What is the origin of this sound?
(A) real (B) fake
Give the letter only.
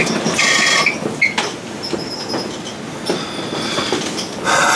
A